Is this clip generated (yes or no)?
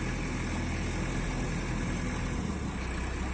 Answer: no